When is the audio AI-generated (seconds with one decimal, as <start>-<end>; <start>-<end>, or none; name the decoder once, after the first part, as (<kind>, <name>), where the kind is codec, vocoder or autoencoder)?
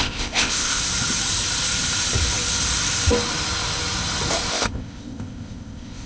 0.0-0.8 (codec, ZipCodec); 4.5-6.1